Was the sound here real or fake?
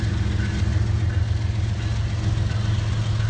real